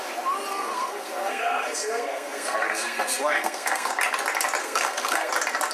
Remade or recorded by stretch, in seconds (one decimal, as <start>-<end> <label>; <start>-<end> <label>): 0.0-0.5 recorded; 0.5-3.9 remade; 3.9-4.6 recorded; 4.6-5.3 remade; 5.3-5.7 recorded